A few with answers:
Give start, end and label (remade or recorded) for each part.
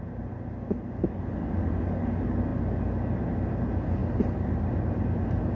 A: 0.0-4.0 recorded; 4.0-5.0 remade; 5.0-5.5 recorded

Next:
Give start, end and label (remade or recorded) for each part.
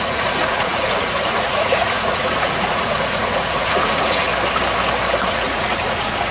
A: 0.0-4.3 remade; 4.3-5.3 recorded; 5.3-6.3 remade